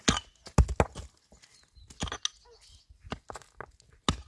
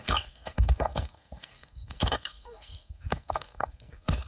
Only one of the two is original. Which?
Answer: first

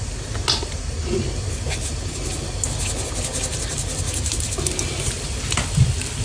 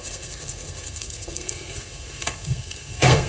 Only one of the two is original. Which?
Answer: first